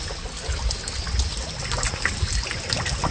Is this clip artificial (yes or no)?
no